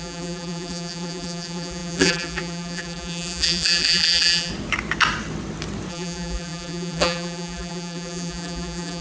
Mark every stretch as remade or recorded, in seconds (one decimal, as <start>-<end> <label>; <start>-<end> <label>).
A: 0.0-4.5 remade; 4.5-5.9 recorded; 5.9-9.0 remade